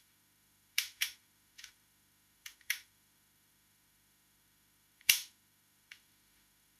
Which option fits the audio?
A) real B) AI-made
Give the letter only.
B